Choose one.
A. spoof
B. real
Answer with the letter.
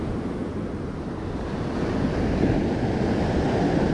B